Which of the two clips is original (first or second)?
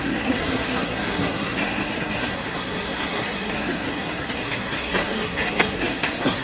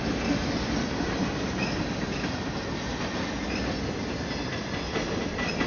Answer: second